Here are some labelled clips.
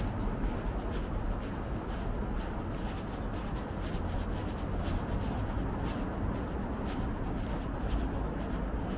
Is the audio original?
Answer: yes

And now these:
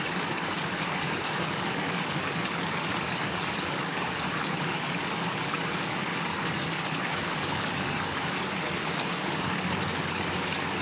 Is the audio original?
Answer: no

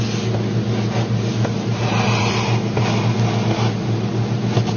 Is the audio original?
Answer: yes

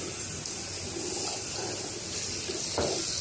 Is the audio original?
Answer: yes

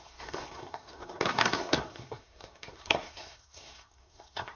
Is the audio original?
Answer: no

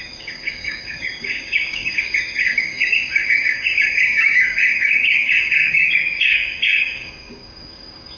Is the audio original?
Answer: no